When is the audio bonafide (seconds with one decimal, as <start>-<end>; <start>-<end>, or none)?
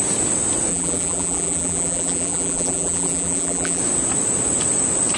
0.0-0.7; 3.8-5.2